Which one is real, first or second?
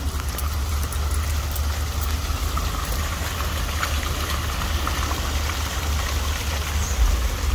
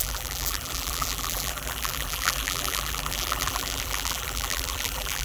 first